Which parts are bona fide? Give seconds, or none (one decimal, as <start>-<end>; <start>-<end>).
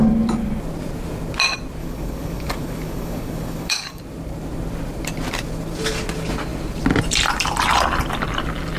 0.0-1.8; 4.0-8.8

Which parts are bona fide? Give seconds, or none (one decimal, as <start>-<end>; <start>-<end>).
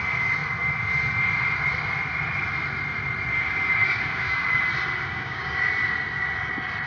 0.0-3.3; 4.6-5.1; 5.7-6.9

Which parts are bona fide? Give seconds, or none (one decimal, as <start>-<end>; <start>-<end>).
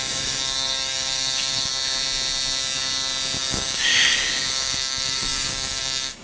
1.7-3.4; 3.9-4.5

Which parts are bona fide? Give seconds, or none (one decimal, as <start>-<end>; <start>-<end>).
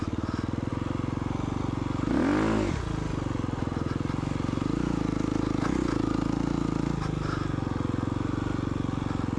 0.0-9.4